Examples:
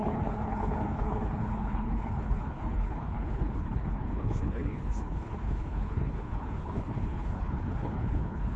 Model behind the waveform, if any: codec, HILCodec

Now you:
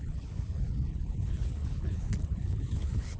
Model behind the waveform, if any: codec, HILCodec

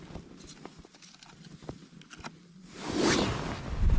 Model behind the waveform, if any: none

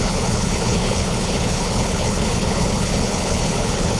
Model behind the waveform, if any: codec, HILCodec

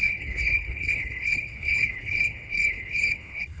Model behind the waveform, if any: codec, HILCodec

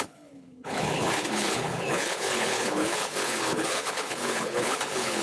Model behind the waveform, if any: codec, HILCodec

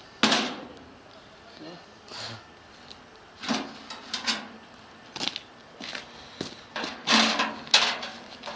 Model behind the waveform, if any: none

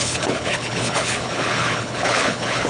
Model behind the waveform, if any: codec, HILCodec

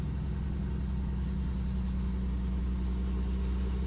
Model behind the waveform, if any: none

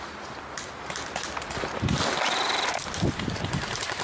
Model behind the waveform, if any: none